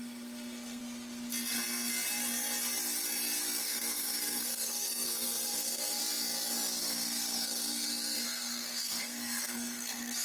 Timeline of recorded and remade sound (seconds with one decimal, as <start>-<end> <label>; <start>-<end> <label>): 0.0-0.8 remade; 0.8-3.6 recorded; 3.6-6.0 remade; 6.0-6.8 recorded; 6.8-10.2 remade